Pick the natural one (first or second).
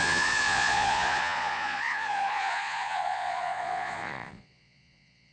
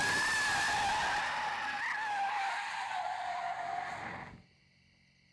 second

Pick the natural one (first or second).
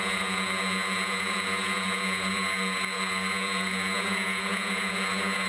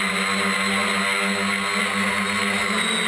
second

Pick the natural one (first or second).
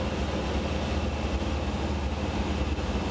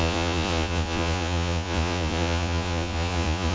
first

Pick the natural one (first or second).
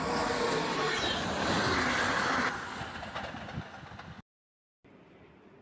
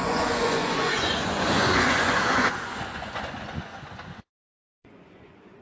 first